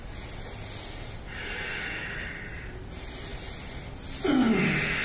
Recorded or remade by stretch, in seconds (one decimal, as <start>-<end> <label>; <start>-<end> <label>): 0.0-5.0 recorded